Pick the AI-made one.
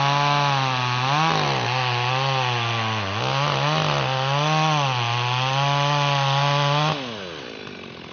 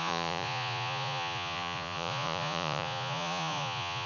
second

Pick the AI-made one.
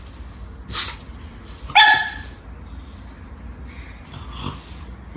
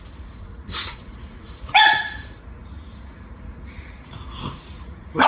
second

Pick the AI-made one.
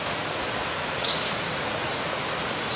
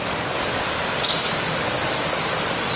first